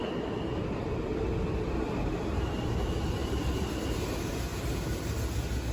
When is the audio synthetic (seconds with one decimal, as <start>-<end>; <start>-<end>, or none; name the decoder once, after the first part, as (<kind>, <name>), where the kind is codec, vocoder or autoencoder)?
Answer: 3.2-3.8 (vocoder, BigVGAN v2); 4.5-5.0